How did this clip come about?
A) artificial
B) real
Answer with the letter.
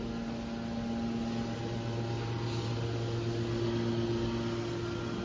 B